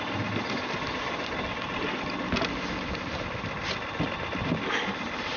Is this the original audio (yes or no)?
yes